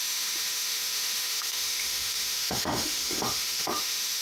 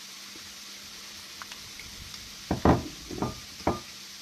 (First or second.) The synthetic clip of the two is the first